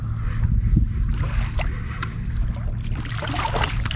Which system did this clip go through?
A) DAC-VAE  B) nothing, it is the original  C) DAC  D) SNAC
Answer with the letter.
B